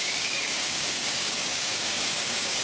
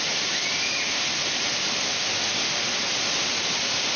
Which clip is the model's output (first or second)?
first